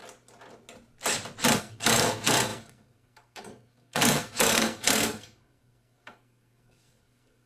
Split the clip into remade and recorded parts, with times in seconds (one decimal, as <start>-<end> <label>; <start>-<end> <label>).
0.0-1.6 recorded; 1.6-7.5 remade